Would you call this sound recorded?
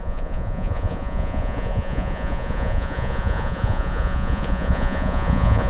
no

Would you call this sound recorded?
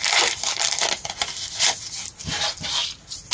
yes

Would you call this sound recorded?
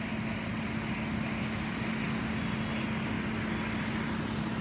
yes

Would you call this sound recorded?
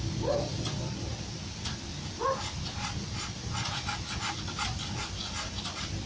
yes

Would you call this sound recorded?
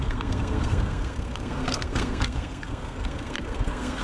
no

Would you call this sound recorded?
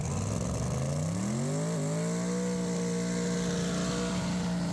yes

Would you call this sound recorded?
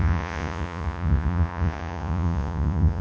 no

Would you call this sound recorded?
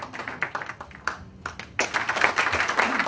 yes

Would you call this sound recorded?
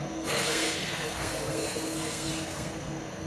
no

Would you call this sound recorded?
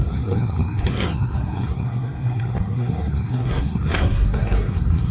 no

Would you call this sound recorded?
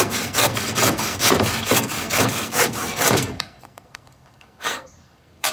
no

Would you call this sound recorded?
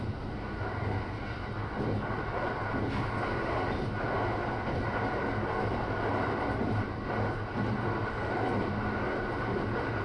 yes